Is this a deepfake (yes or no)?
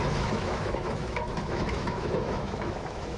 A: yes